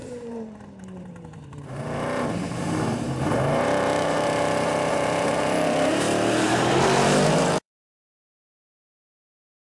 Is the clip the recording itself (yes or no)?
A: no